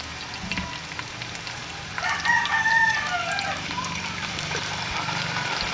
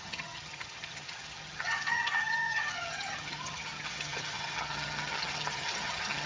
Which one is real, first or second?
first